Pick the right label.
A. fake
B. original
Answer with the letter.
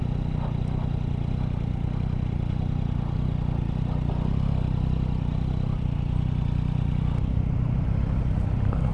B